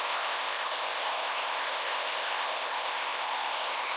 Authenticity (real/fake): fake